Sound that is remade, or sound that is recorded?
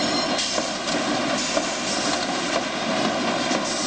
recorded